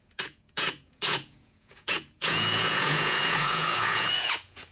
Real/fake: fake